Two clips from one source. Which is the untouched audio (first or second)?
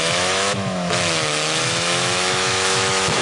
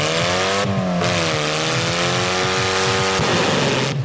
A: second